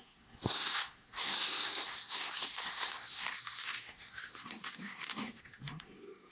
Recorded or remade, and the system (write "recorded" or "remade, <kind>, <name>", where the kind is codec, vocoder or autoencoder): remade, codec, SNAC